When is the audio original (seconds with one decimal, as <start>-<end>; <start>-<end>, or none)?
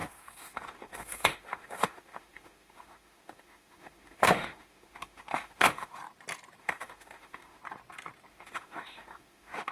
6.0-6.6; 7.6-8.3